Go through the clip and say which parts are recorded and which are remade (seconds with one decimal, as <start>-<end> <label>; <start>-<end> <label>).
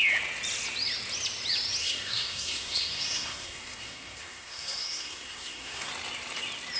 0.0-1.8 recorded; 1.8-5.9 remade; 5.9-6.8 recorded